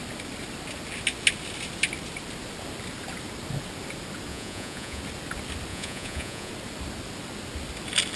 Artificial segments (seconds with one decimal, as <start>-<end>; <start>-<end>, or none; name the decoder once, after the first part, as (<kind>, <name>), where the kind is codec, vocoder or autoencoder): 4.3-5.0 (vocoder, Vocos); 5.7-6.5